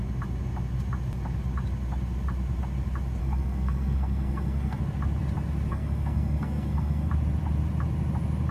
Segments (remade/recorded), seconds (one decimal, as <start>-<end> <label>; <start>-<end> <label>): 0.0-3.2 recorded; 3.2-4.8 remade; 4.8-5.7 recorded; 5.7-7.1 remade; 7.1-8.5 recorded